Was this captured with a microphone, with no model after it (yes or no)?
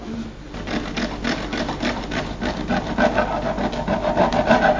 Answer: yes